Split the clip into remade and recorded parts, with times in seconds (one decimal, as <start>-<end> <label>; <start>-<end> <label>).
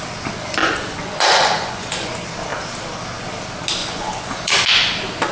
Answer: 0.0-0.6 recorded; 0.6-2.1 remade; 2.1-3.8 recorded; 3.8-4.5 remade; 4.5-5.3 recorded